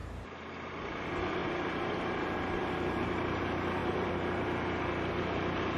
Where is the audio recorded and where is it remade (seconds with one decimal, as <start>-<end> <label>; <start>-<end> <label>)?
0.0-0.8 remade; 0.8-1.4 recorded; 1.4-2.1 remade; 2.1-2.6 recorded; 2.6-3.4 remade; 3.4-3.8 recorded; 3.8-4.8 remade; 4.8-5.8 recorded

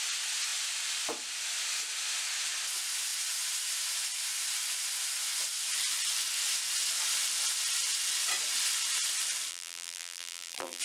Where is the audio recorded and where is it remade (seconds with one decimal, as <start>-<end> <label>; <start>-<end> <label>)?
0.0-9.5 recorded; 9.5-10.8 remade

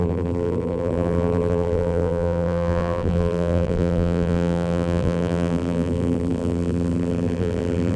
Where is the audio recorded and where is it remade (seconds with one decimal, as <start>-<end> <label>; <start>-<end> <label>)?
0.0-8.0 remade

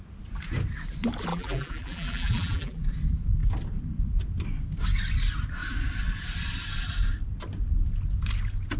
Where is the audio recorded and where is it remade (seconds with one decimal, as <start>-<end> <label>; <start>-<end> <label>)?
0.0-1.3 recorded; 1.3-2.8 remade; 2.8-8.8 recorded

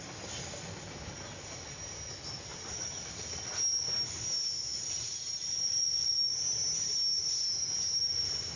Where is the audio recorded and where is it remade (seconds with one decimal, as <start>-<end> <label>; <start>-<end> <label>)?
0.0-2.5 recorded; 2.5-3.4 remade; 3.4-4.7 recorded; 4.7-6.1 remade; 6.1-8.6 recorded

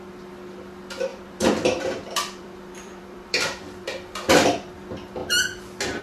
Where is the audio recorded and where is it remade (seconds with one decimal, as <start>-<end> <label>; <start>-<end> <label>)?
0.0-1.1 recorded; 1.1-4.7 remade; 4.7-6.0 recorded

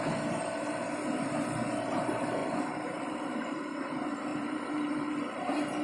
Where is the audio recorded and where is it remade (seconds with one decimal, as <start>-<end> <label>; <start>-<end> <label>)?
0.0-4.3 recorded; 4.3-5.8 remade

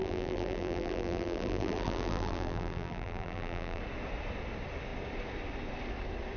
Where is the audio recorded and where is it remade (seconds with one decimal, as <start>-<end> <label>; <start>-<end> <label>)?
0.0-3.8 remade; 3.8-6.4 recorded